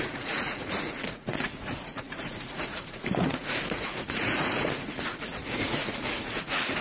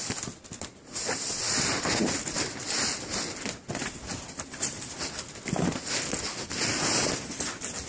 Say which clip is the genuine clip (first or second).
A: second